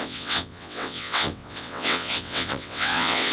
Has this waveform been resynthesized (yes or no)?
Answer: yes